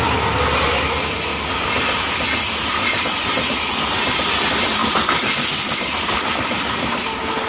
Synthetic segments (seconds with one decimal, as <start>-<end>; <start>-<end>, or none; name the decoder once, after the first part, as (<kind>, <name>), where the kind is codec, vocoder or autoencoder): 1.3-3.6 (vocoder, BigVGAN v2); 4.8-6.1